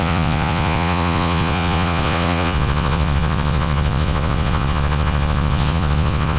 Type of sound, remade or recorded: remade